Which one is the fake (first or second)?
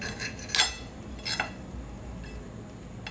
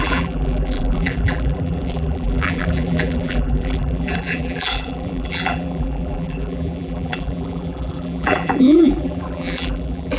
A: second